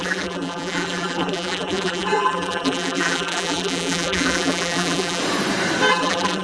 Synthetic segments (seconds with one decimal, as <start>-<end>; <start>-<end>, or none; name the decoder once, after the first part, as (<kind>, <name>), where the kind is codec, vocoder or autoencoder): 0.0-5.2 (vocoder, BigVGAN v2); 5.9-6.4